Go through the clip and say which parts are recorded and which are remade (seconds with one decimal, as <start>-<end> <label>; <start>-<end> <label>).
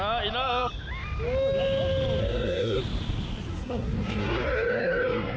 0.0-2.2 recorded; 2.2-2.8 remade; 2.8-3.5 recorded; 3.5-5.4 remade